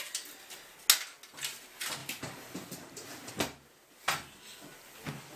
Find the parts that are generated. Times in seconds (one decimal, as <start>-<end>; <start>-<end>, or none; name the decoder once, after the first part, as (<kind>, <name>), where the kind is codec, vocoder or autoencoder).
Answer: 2.0-3.3 (vocoder, BigVGAN v2)